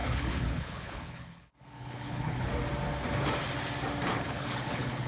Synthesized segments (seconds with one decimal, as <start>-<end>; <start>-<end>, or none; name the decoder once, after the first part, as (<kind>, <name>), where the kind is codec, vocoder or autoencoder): 0.0-2.5 (codec, HILCodec); 4.1-5.1